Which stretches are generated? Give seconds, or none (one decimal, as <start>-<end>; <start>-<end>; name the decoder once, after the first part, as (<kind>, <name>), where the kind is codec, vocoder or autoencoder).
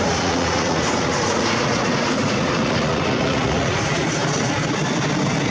0.0-4.2 (vocoder, Vocos)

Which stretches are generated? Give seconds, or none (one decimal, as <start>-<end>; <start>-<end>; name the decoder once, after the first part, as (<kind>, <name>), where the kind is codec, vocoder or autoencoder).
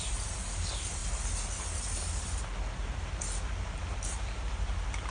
none